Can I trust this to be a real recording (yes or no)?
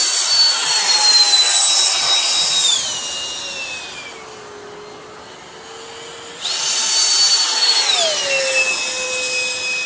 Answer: yes